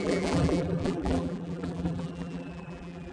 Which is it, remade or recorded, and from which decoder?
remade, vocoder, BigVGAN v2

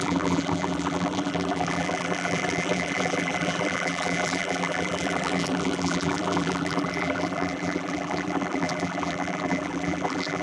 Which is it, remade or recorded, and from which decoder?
remade, vocoder, BigVGAN v2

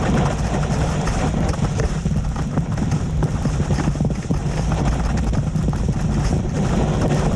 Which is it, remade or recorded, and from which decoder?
recorded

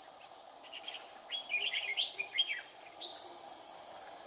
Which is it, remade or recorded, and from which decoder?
recorded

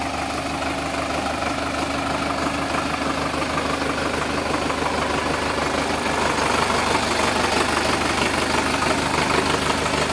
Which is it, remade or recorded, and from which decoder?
recorded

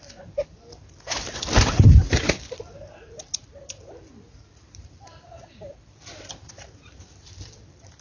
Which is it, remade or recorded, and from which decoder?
remade, vocoder, BigVGAN v2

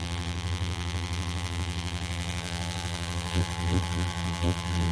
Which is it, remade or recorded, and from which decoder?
remade, vocoder, BigVGAN v2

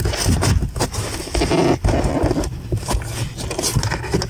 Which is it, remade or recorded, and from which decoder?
recorded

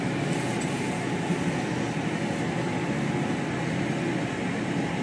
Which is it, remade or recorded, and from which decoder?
recorded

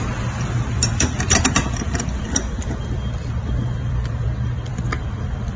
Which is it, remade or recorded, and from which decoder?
remade, vocoder, BigVGAN v2